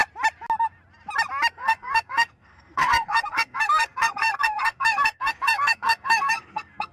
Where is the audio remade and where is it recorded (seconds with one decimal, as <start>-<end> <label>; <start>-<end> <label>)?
0.0-1.5 recorded; 1.5-6.9 remade